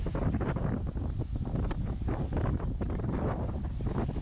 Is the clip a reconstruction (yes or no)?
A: no